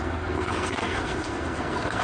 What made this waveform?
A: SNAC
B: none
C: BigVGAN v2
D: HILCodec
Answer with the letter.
A